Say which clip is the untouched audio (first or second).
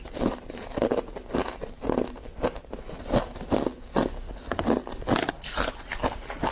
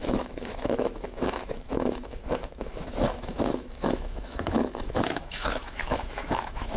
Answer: first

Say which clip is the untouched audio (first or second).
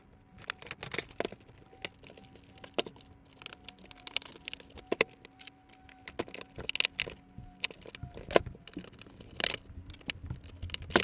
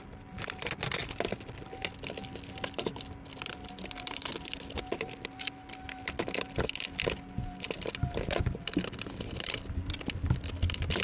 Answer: first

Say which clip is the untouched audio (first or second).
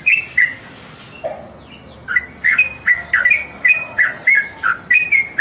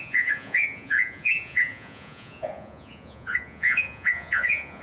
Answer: first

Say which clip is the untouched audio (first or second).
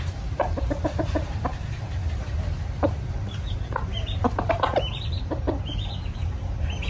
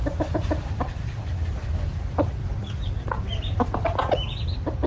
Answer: second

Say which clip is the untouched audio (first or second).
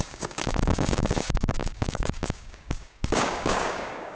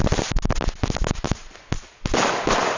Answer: second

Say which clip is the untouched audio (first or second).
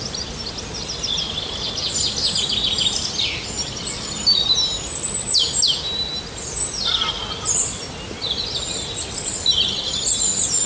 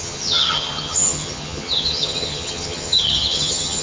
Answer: first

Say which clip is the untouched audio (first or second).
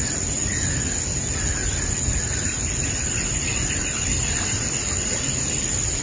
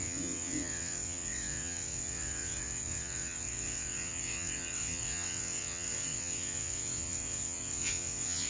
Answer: first